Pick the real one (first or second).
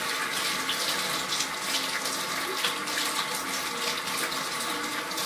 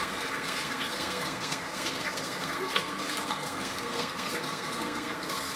first